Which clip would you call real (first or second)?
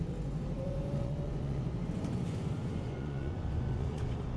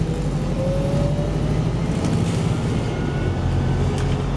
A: second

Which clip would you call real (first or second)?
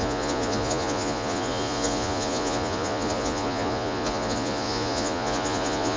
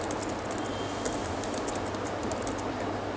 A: second